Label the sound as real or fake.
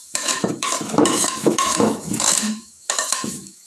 fake